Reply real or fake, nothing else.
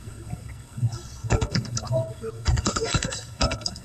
fake